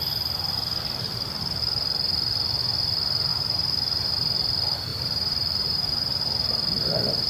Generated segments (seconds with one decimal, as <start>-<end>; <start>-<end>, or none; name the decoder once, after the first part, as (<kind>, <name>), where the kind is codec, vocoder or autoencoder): 3.3-4.1 (vocoder, BigVGAN v2); 4.9-6.2